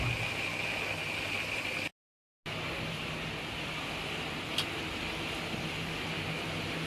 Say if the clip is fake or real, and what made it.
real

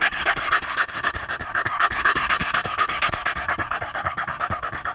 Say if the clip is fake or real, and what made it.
fake, codec, SNAC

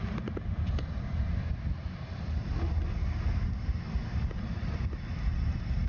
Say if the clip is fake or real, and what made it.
real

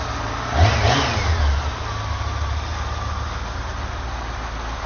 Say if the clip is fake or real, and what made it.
real